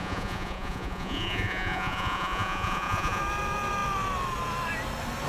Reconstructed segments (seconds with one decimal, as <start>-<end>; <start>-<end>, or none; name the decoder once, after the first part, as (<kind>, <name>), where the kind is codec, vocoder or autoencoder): 0.0-3.2 (vocoder, Vocos)